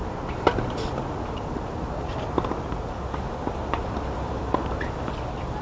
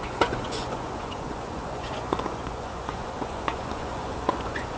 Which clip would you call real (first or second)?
first